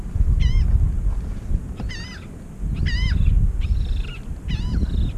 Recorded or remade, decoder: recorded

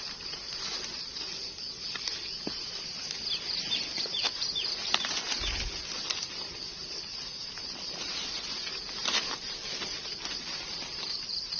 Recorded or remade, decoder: recorded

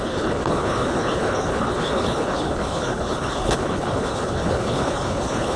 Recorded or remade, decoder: remade, codec, HILCodec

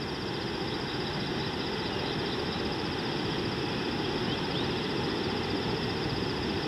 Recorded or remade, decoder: recorded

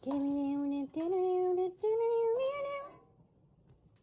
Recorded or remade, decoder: recorded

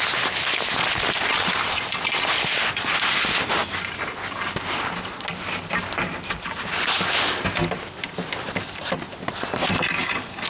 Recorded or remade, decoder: recorded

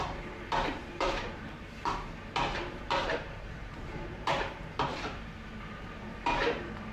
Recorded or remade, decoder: remade, vocoder, BigVGAN v2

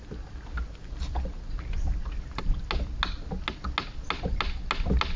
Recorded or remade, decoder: recorded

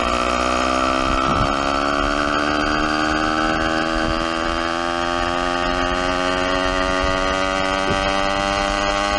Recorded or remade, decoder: recorded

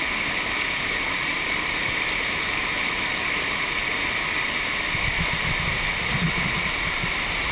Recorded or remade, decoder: recorded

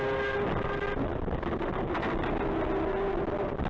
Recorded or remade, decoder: recorded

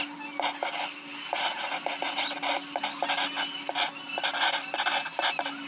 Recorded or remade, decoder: recorded